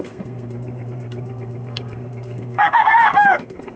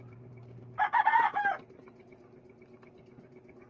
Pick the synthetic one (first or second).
first